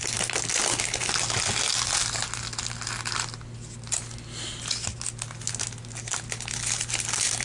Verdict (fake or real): real